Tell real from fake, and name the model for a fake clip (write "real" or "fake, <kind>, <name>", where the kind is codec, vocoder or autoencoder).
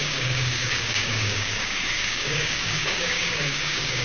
fake, codec, DAC